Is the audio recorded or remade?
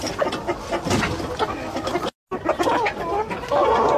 recorded